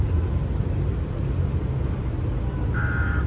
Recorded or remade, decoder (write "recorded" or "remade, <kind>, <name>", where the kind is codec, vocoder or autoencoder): recorded